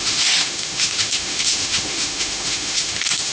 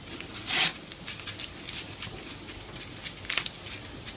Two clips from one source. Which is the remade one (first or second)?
first